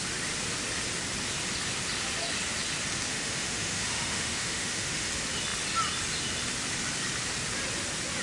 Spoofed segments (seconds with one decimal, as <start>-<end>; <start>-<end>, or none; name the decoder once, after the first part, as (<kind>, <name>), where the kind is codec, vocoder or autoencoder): 3.1-5.1 (autoencoder, DAC-VAE)